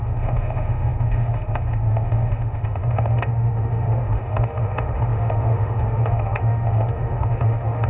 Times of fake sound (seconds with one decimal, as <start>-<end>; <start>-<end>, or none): 0.0-7.9